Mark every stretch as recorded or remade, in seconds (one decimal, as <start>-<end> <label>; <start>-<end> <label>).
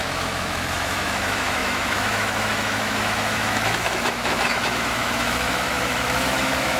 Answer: 0.0-6.8 remade